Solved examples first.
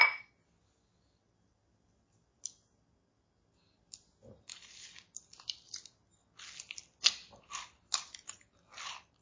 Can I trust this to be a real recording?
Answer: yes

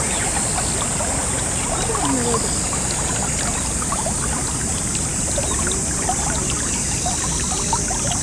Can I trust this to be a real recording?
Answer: yes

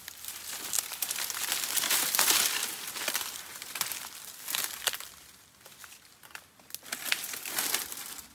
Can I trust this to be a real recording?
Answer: yes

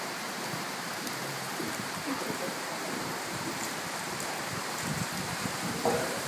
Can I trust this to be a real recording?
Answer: no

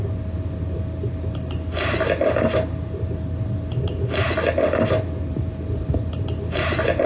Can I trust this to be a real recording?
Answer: yes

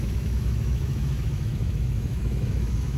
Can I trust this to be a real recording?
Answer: no